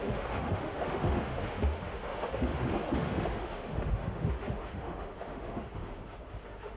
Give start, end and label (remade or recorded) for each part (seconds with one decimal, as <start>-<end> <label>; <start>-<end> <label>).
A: 0.0-6.8 remade